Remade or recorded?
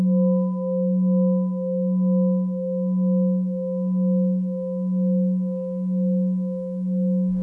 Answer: recorded